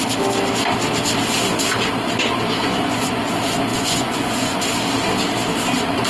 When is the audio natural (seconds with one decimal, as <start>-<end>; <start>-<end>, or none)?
0.0-2.6; 3.2-3.7; 4.6-6.1